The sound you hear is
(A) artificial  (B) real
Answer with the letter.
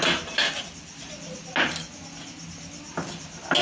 B